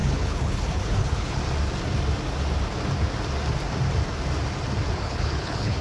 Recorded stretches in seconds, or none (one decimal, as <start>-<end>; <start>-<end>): 1.4-4.9